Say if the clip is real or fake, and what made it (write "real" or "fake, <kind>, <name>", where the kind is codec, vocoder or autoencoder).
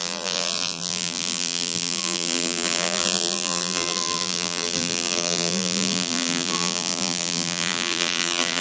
fake, vocoder, BigVGAN v2